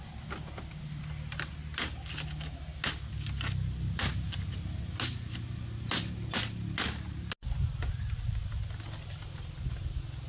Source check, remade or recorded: recorded